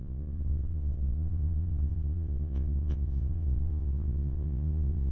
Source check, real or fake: fake